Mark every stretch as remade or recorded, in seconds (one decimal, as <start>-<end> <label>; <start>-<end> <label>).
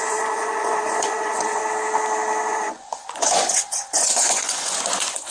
0.0-1.6 remade; 1.6-2.5 recorded; 2.5-5.3 remade